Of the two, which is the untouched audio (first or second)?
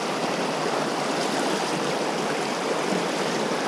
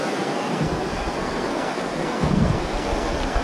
first